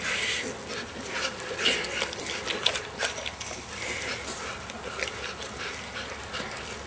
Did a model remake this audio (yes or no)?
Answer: no